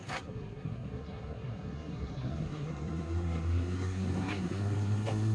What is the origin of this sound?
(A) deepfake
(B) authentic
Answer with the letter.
A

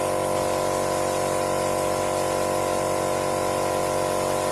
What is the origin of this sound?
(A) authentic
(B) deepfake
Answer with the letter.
A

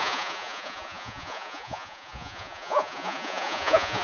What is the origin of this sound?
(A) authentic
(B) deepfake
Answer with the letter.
B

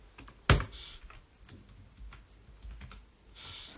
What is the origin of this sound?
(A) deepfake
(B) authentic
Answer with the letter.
B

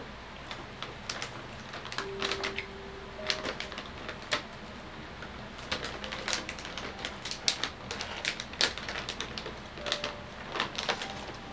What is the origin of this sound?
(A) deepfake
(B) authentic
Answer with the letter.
B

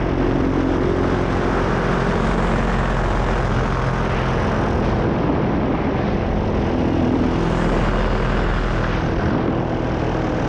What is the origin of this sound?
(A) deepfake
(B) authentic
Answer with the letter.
B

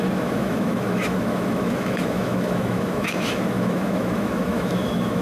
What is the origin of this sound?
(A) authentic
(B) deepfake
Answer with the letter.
B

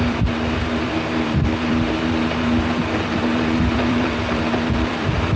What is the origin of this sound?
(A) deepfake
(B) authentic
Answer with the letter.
A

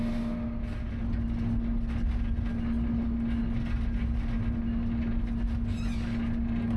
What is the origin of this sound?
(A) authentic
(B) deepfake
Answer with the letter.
A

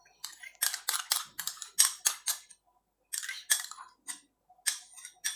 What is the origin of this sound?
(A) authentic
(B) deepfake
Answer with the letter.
A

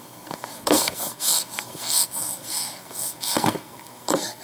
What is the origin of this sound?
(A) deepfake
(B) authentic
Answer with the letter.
A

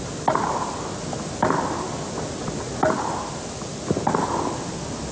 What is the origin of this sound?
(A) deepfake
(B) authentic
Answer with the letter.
B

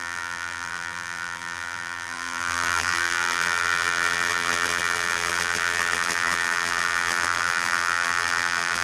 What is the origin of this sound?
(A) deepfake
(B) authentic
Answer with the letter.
A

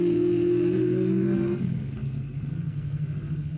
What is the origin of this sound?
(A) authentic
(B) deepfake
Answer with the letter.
B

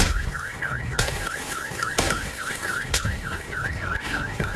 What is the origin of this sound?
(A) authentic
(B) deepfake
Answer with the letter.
B